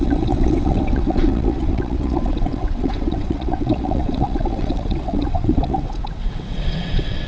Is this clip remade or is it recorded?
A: remade